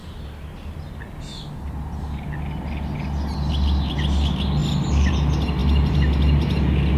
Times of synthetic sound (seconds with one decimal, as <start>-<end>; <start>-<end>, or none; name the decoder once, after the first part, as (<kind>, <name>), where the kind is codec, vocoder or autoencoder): 4.6-5.1 (vocoder, BigVGAN v2)